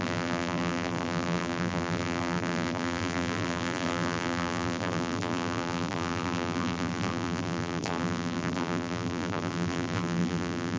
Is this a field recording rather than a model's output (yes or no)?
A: no